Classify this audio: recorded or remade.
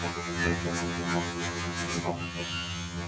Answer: remade